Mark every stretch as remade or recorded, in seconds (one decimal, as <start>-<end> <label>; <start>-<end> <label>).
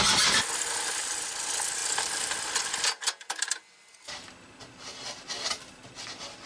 0.0-6.5 recorded